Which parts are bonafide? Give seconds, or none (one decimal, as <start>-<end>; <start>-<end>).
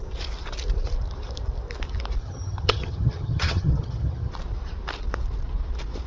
0.0-2.2; 4.3-6.1